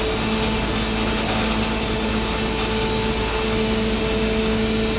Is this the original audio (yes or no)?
yes